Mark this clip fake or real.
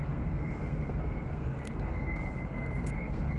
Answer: fake